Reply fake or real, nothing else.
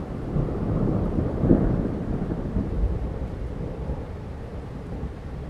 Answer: fake